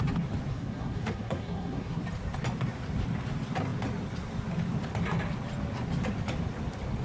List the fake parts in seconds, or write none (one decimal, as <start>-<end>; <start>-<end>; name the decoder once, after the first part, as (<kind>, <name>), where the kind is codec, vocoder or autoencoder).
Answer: 0.5-2.0 (codec, SNAC)